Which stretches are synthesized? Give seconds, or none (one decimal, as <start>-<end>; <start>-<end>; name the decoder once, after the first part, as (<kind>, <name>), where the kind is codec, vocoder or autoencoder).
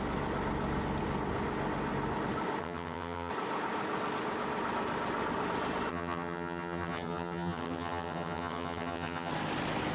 2.6-3.3 (vocoder, HiFi-GAN); 5.9-9.3